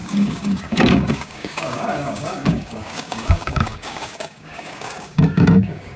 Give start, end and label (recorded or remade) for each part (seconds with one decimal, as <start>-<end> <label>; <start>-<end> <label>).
0.0-6.0 remade